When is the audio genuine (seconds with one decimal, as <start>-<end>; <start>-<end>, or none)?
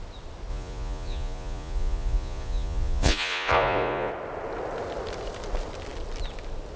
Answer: 0.0-0.5; 4.1-6.8